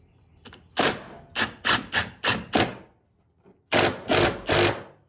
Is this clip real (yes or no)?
yes